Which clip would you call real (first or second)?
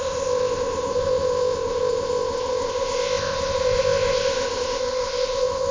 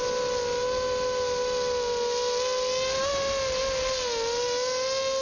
second